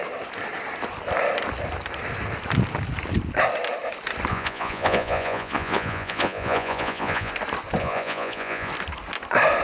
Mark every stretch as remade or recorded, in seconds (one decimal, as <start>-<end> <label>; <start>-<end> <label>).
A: 0.0-4.3 recorded; 4.3-7.3 remade; 7.3-7.8 recorded; 7.8-8.7 remade; 8.7-9.6 recorded